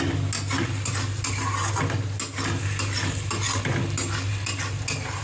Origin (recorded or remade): recorded